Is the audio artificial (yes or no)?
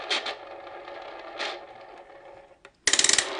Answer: no